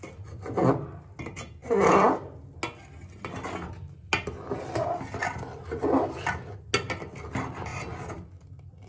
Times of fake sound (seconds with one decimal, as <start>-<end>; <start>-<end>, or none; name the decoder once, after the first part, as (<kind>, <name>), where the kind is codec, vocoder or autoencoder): none